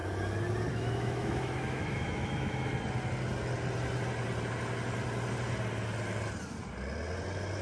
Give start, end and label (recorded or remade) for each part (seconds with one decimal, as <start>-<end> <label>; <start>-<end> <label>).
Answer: 0.0-0.7 recorded; 0.7-2.7 remade; 2.7-7.6 recorded